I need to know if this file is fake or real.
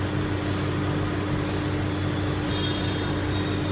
real